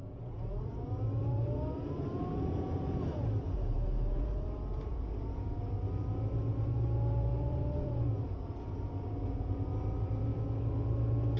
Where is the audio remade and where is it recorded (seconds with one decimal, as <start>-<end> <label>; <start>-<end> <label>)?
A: 0.0-10.3 remade; 10.3-11.4 recorded